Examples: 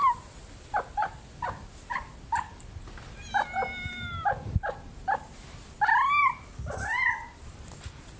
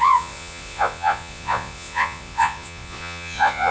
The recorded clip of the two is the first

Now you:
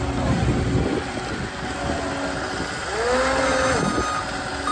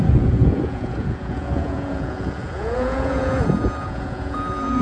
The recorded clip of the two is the first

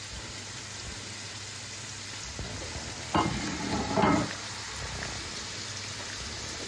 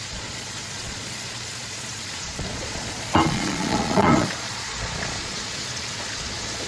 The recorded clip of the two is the first